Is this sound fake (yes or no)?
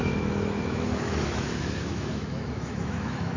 yes